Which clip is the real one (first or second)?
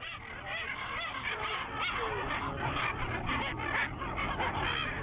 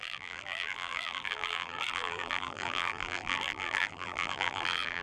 first